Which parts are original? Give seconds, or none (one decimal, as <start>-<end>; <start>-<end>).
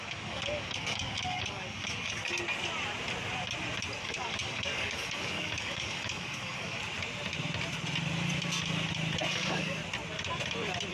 2.3-4.0; 6.8-9.3; 9.8-10.9